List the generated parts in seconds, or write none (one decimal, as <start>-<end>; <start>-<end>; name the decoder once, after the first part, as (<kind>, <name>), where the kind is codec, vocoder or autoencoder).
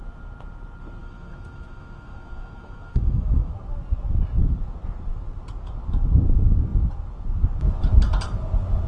1.0-3.5 (autoencoder, DAC-VAE)